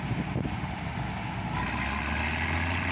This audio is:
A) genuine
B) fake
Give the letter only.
A